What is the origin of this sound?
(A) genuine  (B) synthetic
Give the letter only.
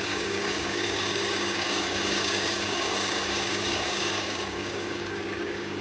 B